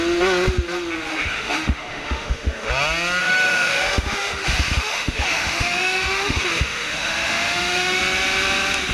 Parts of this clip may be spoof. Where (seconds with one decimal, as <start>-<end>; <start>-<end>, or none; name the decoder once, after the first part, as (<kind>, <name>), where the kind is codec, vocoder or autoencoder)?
1.1-2.7 (autoencoder, DAC-VAE); 3.2-8.0